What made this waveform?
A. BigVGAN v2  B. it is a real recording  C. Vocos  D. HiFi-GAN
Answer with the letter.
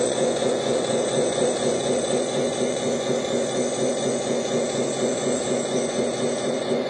C